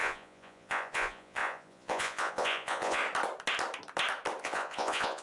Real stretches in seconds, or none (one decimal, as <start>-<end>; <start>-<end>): 3.0-4.4